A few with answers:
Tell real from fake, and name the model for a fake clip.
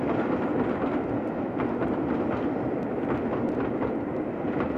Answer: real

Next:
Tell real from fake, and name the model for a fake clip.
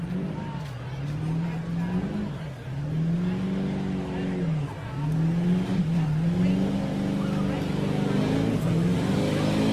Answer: real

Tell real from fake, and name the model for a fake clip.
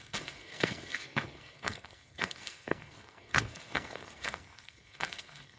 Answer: fake, codec, SNAC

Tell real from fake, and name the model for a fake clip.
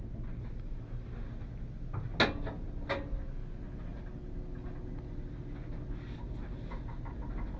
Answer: real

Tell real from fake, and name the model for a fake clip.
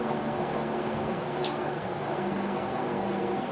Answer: fake, codec, SNAC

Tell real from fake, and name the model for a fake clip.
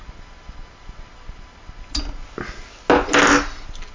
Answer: real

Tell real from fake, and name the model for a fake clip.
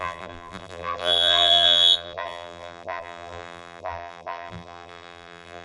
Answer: fake, vocoder, BigVGAN v2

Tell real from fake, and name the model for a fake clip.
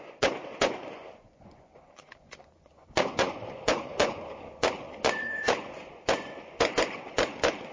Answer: fake, vocoder, Vocos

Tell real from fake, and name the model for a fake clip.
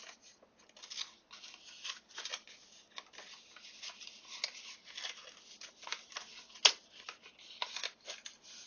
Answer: real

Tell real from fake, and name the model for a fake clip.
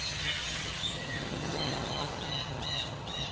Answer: fake, vocoder, HiFi-GAN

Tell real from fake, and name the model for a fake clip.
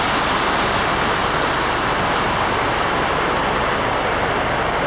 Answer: real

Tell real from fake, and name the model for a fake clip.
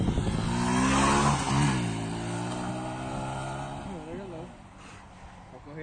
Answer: real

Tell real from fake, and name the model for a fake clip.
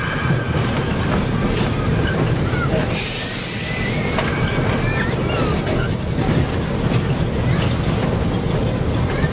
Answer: real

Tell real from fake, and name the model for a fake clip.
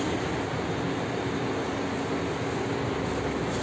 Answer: real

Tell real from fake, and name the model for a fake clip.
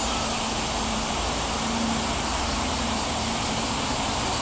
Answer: fake, vocoder, BigVGAN v2